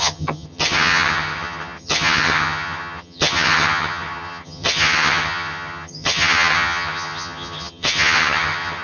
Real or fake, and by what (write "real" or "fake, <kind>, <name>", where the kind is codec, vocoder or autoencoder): fake, vocoder, HiFi-GAN